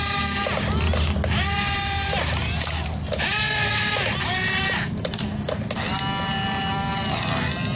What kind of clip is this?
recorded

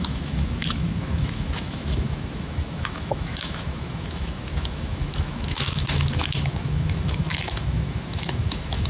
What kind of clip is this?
remade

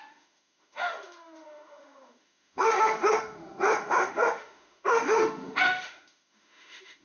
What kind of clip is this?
remade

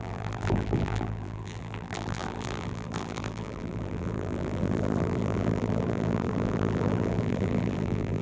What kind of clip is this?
remade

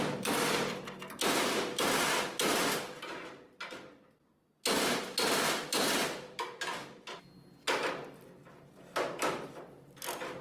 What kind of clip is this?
recorded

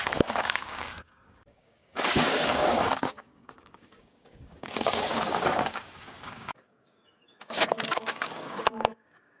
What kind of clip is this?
remade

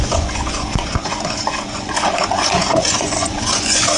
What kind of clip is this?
remade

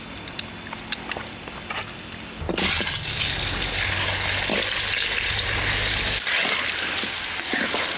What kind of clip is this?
recorded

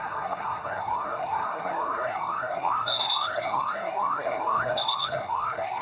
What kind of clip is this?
remade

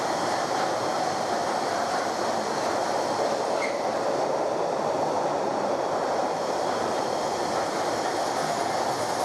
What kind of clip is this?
recorded